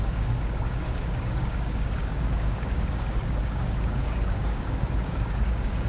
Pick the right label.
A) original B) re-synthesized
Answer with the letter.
B